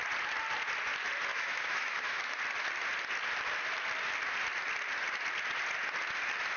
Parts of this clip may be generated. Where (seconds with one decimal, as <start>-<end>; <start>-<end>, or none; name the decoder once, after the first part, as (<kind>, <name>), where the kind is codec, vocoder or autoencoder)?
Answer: 1.3-2.4 (autoencoder, DAC-VAE)